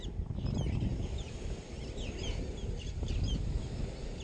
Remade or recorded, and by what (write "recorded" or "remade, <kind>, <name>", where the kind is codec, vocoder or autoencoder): recorded